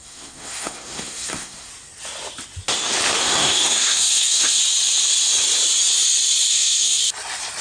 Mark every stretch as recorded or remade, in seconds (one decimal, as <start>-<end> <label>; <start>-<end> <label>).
0.0-1.7 remade; 1.7-3.2 recorded; 3.2-4.6 remade; 4.6-6.5 recorded; 6.5-7.0 remade; 7.0-7.6 recorded